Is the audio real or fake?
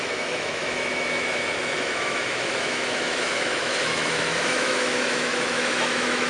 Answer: fake